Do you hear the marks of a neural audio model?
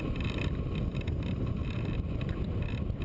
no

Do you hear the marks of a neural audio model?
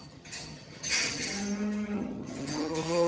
yes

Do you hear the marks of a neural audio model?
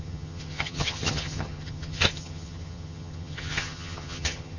yes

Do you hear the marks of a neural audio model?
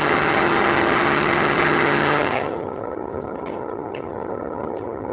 yes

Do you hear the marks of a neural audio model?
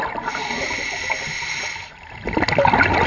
no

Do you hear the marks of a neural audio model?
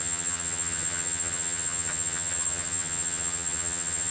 yes